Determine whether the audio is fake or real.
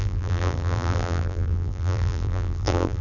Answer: fake